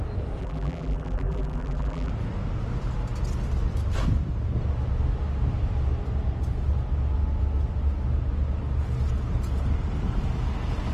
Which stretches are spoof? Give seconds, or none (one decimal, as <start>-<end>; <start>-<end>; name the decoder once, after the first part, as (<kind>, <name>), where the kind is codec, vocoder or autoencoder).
0.4-2.1 (vocoder, BigVGAN v2)